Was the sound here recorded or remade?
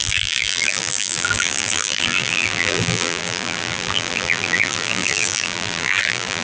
remade